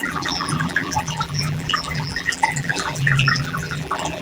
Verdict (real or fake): fake